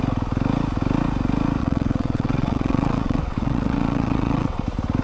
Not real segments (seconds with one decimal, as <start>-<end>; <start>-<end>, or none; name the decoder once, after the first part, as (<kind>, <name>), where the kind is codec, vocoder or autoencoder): 1.6-4.6 (vocoder, WaveNeXt)